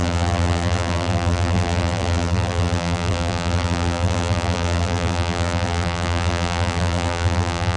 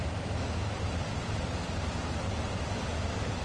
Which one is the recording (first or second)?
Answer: second